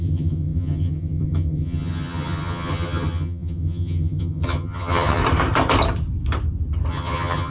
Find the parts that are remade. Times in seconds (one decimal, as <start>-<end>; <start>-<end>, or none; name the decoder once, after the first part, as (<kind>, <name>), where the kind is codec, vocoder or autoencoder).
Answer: 0.0-5.2 (vocoder, HiFi-GAN); 6.9-7.5